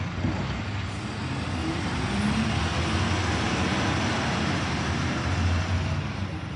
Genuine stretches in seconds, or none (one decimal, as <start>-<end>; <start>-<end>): 0.0-1.6; 2.1-6.6